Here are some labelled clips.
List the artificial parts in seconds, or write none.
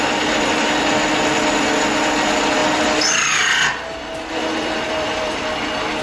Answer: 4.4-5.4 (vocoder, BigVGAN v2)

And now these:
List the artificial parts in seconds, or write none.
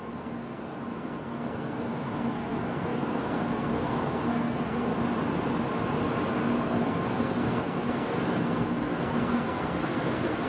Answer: 0.0-4.9 (codec, SNAC); 6.3-10.5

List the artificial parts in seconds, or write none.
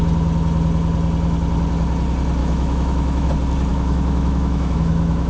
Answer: 2.4-3.3 (autoencoder, DAC-VAE); 3.7-5.3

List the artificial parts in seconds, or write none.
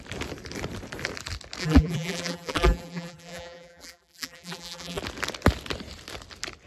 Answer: 1.6-5.0 (vocoder, BigVGAN v2)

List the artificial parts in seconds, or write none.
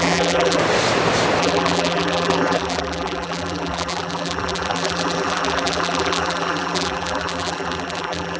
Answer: 0.0-0.6 (vocoder, BigVGAN v2); 1.4-8.4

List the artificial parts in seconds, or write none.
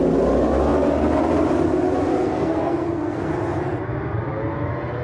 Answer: 2.1-3.3 (codec, SNAC)